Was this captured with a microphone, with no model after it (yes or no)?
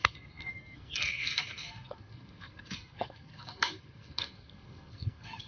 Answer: no